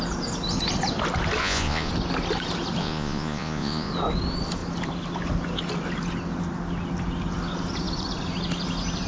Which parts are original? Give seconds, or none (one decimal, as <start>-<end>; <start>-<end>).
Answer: 0.0-1.4; 1.9-2.8; 3.9-9.1